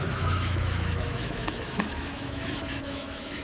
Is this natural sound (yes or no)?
no